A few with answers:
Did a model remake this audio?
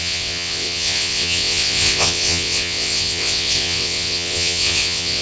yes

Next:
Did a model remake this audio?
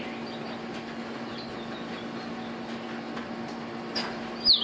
no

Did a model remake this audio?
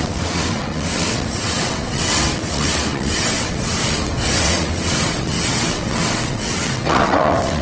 yes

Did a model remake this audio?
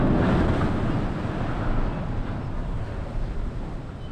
no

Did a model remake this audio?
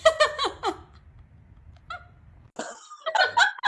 no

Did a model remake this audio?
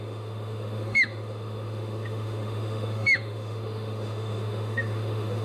yes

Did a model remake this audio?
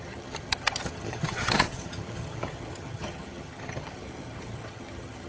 yes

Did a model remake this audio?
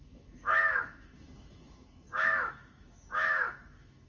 yes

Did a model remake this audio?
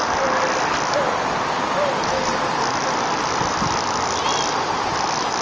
no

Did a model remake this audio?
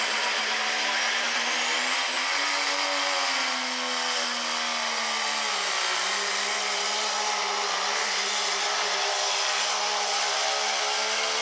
no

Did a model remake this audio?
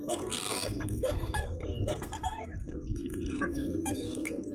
yes